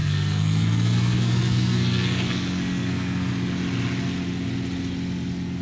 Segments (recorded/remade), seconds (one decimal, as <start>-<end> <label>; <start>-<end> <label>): 0.0-3.3 remade; 3.3-5.6 recorded